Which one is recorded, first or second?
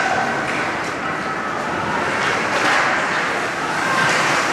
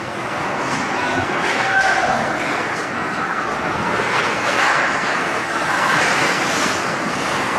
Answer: first